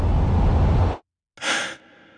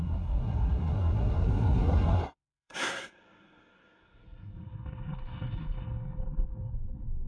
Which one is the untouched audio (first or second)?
first